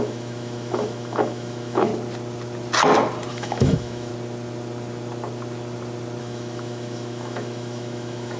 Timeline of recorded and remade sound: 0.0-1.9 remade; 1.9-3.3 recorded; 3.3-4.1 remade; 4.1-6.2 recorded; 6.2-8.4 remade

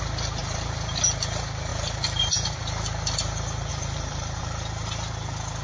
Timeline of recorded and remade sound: 0.0-0.4 recorded; 0.4-1.0 remade; 1.0-3.7 recorded; 3.7-4.4 remade; 4.4-5.6 recorded

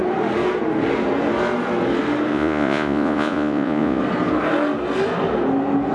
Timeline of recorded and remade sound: 0.0-2.3 recorded; 2.3-4.0 remade; 4.0-5.9 recorded

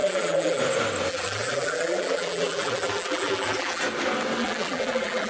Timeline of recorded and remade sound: 0.0-0.6 remade; 0.6-1.1 recorded; 1.1-3.8 remade; 3.8-4.4 recorded; 4.4-5.3 remade

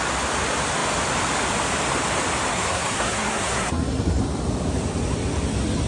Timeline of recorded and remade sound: 0.0-2.5 recorded; 2.5-4.2 remade; 4.2-5.9 recorded

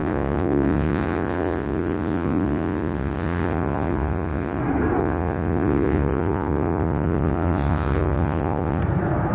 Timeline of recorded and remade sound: 0.0-4.6 remade; 4.6-5.0 recorded; 5.0-8.8 remade; 8.8-9.3 recorded